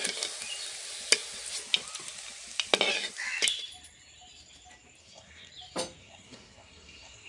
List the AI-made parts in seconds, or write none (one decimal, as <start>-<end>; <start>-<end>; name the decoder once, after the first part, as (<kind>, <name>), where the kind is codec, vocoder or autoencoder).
5.0-5.5 (codec, SNAC); 6.0-7.3